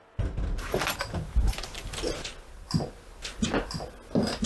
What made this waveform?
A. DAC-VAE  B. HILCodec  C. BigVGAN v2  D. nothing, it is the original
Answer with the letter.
D